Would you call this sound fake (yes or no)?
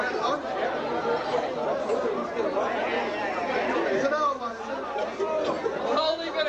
no